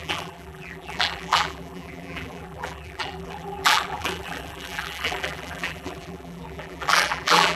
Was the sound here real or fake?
fake